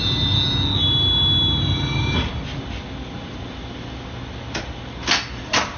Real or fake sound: real